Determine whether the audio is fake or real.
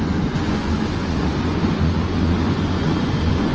fake